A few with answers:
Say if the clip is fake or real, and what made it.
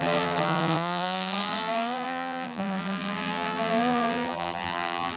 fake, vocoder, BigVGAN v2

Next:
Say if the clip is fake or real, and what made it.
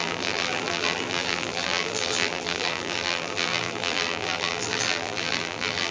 fake, vocoder, BigVGAN v2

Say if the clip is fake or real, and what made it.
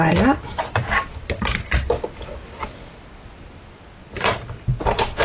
real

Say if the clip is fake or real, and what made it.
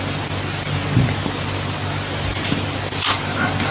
real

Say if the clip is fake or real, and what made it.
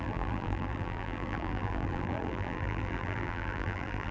fake, vocoder, BigVGAN v2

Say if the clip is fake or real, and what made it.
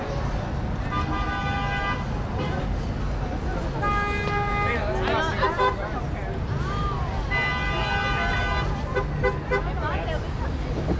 real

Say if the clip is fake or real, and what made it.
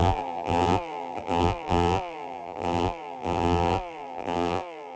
fake, vocoder, BigVGAN v2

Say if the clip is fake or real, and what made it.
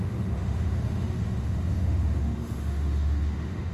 fake, autoencoder, DAC-VAE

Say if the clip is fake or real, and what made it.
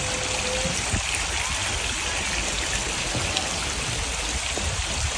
real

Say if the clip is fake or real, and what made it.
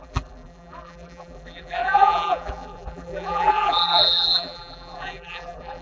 fake, vocoder, BigVGAN v2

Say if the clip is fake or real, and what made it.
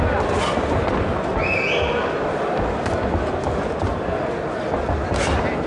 real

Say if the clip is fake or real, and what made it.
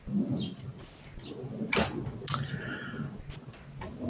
real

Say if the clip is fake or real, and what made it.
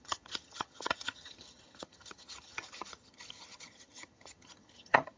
fake, vocoder, HiFi-GAN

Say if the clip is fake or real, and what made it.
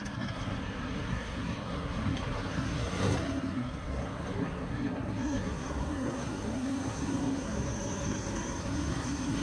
fake, codec, SNAC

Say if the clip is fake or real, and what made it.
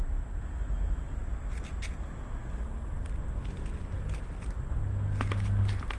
real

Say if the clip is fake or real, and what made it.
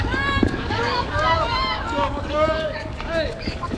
fake, codec, DAC